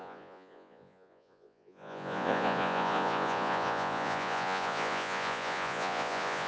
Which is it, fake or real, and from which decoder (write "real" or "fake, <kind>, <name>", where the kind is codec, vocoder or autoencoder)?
fake, vocoder, Vocos